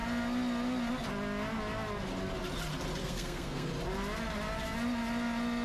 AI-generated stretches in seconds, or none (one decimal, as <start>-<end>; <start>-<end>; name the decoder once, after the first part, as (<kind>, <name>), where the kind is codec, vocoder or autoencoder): 3.0-3.7 (codec, SNAC)